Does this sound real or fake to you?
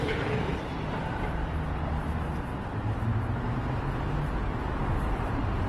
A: real